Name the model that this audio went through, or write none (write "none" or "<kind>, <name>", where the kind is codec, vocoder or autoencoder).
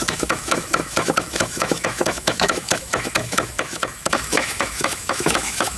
autoencoder, DAC-VAE